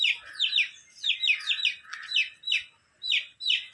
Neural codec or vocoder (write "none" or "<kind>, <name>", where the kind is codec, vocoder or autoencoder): none